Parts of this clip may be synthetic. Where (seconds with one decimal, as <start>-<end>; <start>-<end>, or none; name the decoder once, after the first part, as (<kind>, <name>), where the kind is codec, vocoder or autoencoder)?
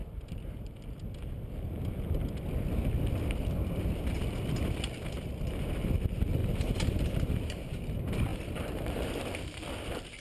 6.4-7.8 (vocoder, BigVGAN v2); 8.3-9.1